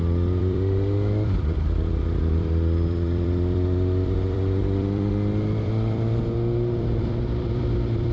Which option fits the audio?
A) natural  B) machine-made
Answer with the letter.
B